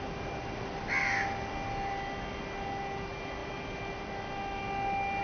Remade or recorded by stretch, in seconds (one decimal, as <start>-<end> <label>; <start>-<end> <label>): 0.0-5.2 recorded